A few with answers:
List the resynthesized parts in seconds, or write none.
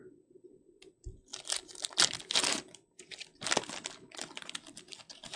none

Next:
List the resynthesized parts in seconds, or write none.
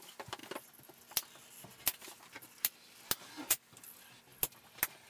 none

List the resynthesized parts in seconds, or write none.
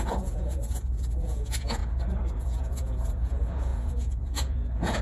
0.0-1.8 (vocoder, Vocos); 2.4-5.0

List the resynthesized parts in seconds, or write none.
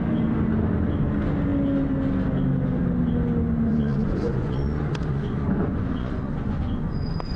3.7-7.4 (vocoder, Vocos)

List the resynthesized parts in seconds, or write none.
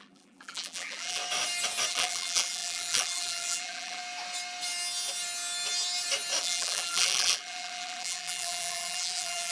0.0-1.2 (vocoder, BigVGAN v2); 1.9-4.0; 6.4-9.5